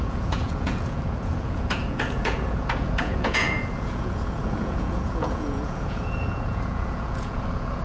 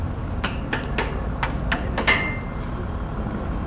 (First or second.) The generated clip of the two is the first